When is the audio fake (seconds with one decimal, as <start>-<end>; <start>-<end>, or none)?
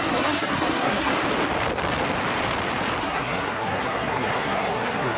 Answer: 0.0-1.1; 3.0-5.2